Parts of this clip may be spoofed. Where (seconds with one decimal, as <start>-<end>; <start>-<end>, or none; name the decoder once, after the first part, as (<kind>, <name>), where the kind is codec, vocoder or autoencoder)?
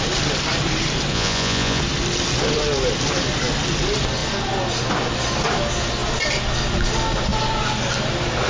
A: 1.1-1.8 (vocoder, Vocos)